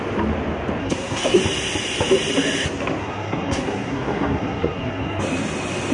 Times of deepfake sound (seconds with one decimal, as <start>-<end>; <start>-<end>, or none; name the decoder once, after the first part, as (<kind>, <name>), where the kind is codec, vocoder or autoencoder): 0.8-1.4 (codec, SNAC); 3.0-5.2